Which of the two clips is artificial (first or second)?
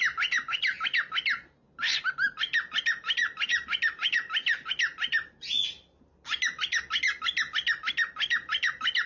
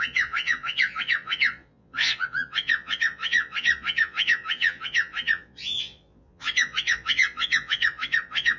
second